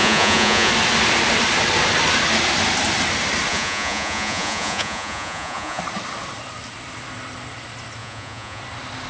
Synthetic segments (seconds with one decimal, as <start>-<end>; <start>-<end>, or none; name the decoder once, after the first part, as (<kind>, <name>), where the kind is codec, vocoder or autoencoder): 0.0-0.7 (vocoder, Vocos); 3.5-5.8; 8.0-8.6